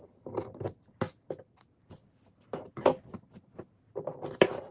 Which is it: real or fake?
real